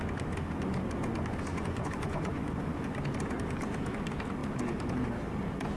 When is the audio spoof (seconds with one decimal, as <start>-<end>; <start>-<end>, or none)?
1.5-2.9